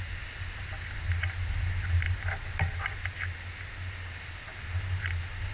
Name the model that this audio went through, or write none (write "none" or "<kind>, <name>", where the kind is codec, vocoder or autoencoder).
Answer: none